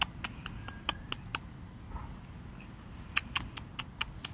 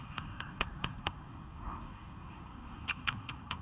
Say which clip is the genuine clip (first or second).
first